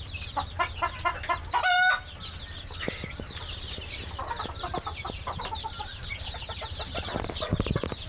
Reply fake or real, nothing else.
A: real